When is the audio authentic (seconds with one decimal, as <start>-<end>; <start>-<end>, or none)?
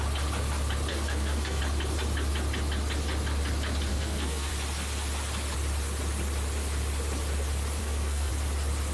0.0-0.9; 1.6-3.9; 4.5-7.8; 8.3-8.9